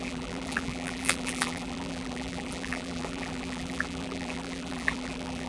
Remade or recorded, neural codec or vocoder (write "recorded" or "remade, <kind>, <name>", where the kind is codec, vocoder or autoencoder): remade, vocoder, BigVGAN v2